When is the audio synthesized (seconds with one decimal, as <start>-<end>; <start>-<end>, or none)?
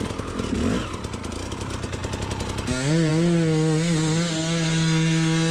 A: none